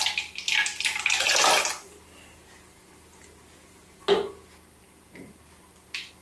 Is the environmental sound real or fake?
real